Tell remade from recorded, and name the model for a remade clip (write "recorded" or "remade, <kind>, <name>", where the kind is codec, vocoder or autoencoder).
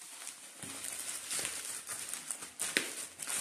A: recorded